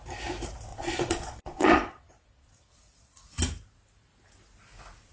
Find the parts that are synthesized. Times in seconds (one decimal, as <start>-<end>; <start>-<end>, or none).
0.7-3.3